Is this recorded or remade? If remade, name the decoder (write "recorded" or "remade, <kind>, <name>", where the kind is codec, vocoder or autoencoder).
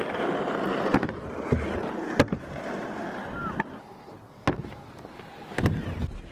recorded